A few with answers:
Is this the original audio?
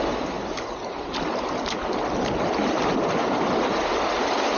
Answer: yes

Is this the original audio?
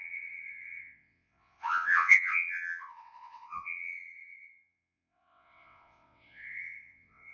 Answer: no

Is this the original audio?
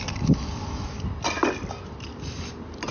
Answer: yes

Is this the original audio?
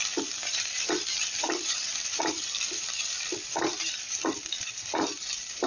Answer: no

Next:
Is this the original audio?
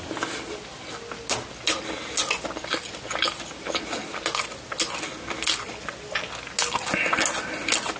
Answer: yes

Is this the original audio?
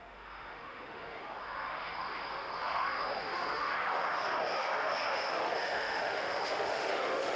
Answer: no